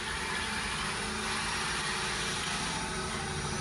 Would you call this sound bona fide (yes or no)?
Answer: yes